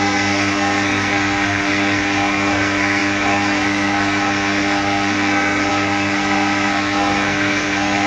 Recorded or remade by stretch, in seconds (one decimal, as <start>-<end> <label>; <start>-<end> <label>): 0.0-8.1 remade